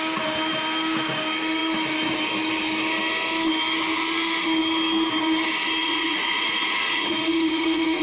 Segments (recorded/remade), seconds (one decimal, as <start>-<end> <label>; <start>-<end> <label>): 0.0-5.8 recorded; 5.8-8.0 remade